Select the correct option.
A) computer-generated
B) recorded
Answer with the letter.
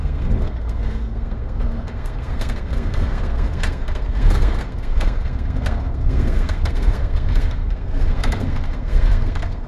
A